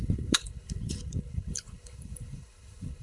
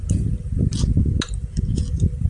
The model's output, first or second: first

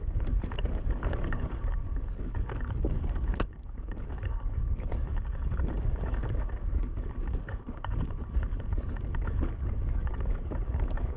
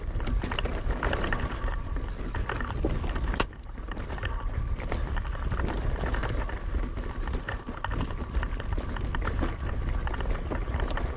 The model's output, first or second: first